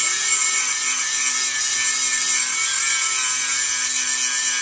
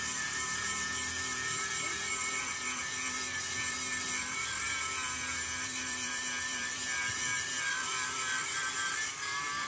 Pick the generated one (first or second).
second